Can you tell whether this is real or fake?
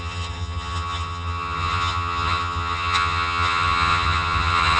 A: fake